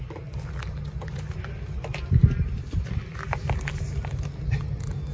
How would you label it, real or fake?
real